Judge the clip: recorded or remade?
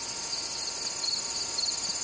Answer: recorded